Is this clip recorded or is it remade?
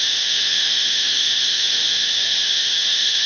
remade